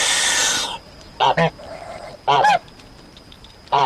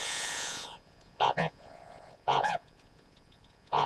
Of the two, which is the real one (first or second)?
first